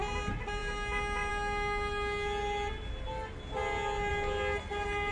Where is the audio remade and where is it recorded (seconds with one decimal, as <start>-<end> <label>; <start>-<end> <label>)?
0.0-5.1 recorded